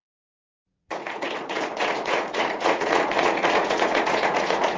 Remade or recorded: remade